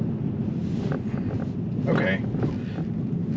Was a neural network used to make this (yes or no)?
no